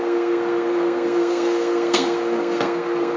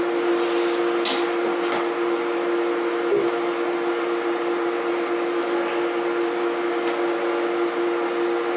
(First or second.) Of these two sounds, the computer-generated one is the first